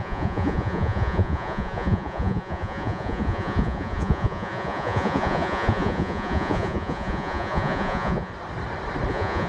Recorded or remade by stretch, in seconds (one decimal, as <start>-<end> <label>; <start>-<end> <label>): 0.0-8.3 remade; 8.3-9.1 recorded; 9.1-9.5 remade